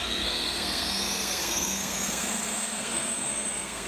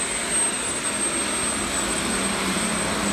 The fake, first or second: first